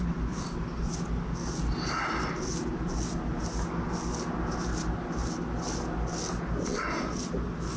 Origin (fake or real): real